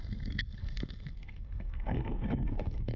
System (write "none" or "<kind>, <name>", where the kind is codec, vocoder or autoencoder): codec, SNAC